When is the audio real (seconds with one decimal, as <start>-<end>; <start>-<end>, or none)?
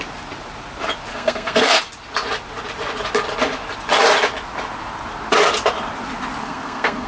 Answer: 0.0-1.1; 1.8-6.4